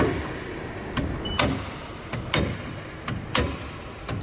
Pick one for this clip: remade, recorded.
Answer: recorded